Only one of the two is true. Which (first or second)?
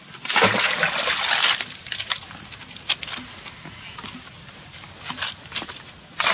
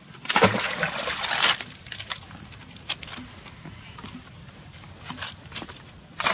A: first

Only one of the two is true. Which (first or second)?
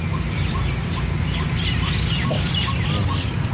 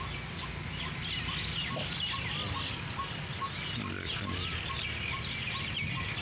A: second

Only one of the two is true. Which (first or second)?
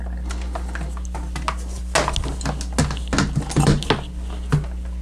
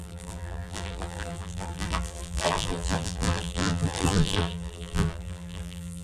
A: first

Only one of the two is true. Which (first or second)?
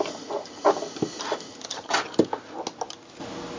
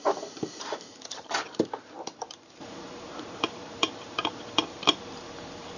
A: first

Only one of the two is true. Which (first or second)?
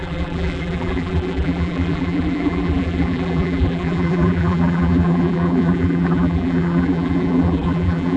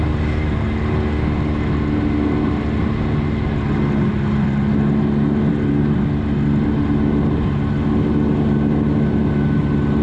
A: second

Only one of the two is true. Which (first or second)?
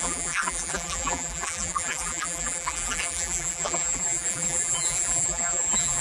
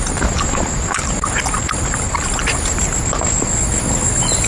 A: second